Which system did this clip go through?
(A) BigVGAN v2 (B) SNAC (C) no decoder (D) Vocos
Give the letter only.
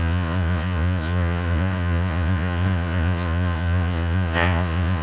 D